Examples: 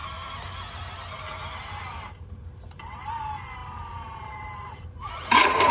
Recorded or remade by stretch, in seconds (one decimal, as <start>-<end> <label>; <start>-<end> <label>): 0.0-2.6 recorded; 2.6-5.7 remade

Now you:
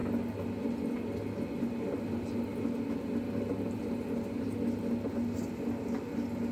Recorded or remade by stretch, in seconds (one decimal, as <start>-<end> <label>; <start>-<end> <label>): 0.0-6.5 recorded

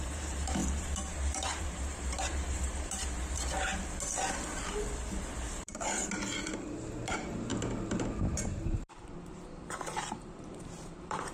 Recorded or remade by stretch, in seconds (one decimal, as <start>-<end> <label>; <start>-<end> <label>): 0.0-3.7 remade; 3.7-5.3 recorded; 5.3-6.0 remade; 6.0-6.6 recorded; 6.6-7.5 remade; 7.5-8.2 recorded; 8.2-11.3 remade

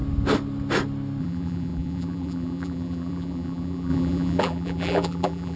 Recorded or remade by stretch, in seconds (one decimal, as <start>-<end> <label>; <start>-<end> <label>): 0.0-1.2 recorded; 1.2-5.6 remade

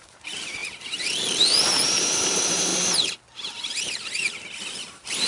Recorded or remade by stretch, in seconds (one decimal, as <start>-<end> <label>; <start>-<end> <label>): 0.0-2.7 remade; 2.7-4.7 recorded; 4.7-5.3 remade